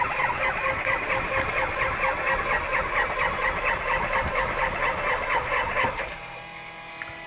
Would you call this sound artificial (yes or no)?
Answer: no